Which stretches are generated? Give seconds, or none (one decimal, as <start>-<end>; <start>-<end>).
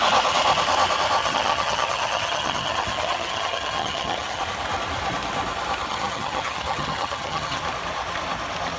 1.2-4.4; 5.9-7.6